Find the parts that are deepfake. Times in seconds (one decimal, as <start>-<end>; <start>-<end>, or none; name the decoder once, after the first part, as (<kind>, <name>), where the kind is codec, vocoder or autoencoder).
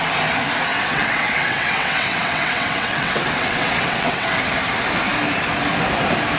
0.7-4.4 (vocoder, WaveNeXt)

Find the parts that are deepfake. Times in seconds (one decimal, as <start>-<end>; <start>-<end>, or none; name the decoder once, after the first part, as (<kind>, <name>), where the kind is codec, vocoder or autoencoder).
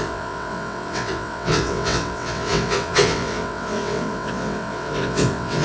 0.0-5.6 (vocoder, WaveNeXt)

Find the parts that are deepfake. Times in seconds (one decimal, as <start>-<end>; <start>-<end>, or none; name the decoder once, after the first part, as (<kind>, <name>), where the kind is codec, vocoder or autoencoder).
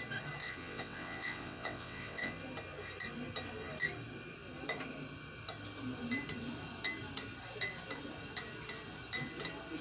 0.4-2.3 (vocoder, WaveNeXt)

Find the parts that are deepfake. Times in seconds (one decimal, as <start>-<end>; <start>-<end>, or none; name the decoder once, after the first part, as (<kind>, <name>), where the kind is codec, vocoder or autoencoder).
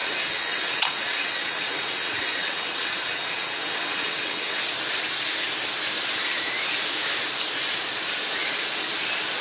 0.0-4.6 (vocoder, WaveNeXt)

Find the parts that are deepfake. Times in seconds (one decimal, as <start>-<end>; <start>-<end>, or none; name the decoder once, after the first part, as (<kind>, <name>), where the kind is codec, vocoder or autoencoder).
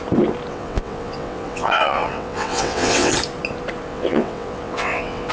0.5-3.1 (vocoder, WaveNeXt); 3.9-5.3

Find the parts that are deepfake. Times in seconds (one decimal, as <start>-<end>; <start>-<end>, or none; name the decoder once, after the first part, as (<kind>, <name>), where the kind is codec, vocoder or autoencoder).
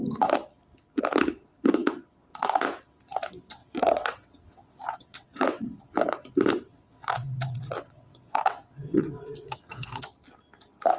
3.6-5.7 (vocoder, WaveNeXt); 6.7-10.0